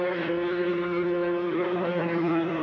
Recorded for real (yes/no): no